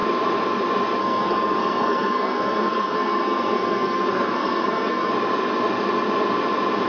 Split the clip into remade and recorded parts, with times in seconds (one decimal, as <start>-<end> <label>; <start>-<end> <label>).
0.0-1.0 recorded; 1.0-5.1 remade; 5.1-6.9 recorded